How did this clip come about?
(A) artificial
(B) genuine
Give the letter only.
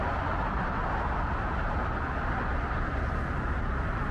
B